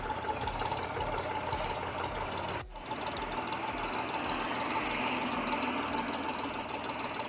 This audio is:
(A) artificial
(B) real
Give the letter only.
B